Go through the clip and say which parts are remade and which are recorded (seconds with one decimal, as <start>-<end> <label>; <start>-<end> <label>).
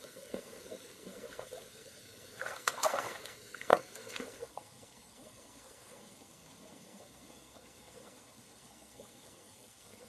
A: 0.0-10.1 remade